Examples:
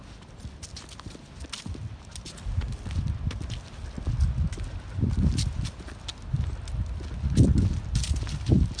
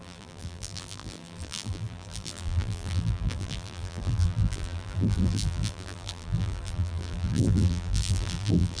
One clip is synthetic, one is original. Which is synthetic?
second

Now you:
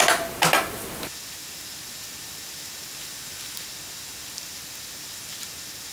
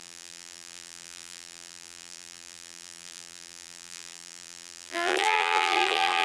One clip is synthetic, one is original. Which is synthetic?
second